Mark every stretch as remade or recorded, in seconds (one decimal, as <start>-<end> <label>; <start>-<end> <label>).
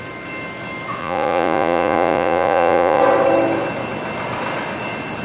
0.0-1.0 recorded; 1.0-3.0 remade; 3.0-5.2 recorded